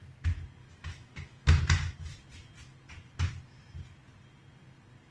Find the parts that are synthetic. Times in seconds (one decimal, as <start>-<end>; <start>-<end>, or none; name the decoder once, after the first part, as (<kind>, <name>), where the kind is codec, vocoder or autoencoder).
0.6-1.6 (autoencoder, DAC-VAE)